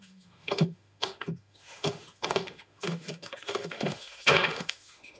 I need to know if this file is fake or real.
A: fake